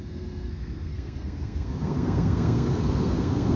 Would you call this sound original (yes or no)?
no